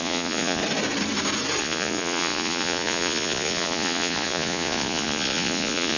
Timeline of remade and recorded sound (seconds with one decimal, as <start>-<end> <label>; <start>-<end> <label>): 0.0-0.6 remade; 0.6-1.6 recorded; 1.6-6.0 remade

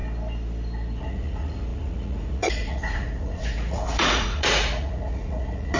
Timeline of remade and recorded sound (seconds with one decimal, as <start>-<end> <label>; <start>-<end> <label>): 0.0-1.0 recorded; 1.0-5.8 remade

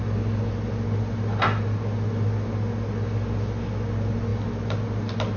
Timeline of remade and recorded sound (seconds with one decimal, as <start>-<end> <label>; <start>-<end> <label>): 0.0-5.4 recorded

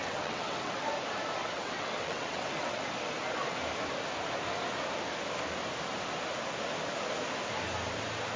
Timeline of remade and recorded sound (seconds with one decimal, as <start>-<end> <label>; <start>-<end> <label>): 0.0-0.9 remade; 0.9-1.4 recorded; 1.4-2.8 remade; 2.8-8.4 recorded

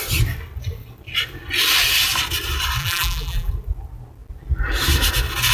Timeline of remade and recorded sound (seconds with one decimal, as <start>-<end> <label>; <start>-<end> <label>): 0.0-2.8 recorded; 2.8-3.5 remade; 3.5-5.5 recorded

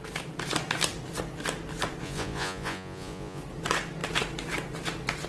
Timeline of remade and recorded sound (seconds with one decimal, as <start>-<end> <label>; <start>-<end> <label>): 0.0-2.0 recorded; 2.0-3.4 remade; 3.4-5.3 recorded

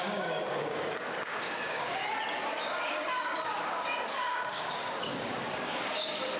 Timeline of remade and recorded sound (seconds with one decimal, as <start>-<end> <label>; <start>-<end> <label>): 0.0-2.0 remade; 2.0-2.6 recorded; 2.6-6.4 remade

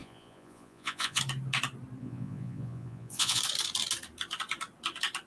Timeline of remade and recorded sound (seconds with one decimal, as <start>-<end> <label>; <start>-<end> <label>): 0.0-1.2 remade; 1.2-2.0 recorded; 2.0-3.4 remade; 3.4-5.3 recorded